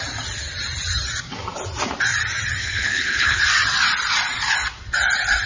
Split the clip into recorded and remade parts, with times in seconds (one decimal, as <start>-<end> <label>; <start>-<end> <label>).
0.0-2.6 recorded; 2.6-3.4 remade; 3.4-5.5 recorded